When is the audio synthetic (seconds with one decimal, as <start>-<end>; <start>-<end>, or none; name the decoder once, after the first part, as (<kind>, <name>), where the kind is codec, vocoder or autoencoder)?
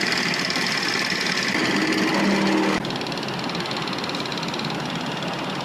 4.3-4.9 (vocoder, BigVGAN v2)